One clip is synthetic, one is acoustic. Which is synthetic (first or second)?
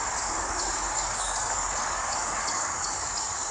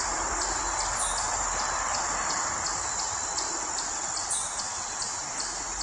first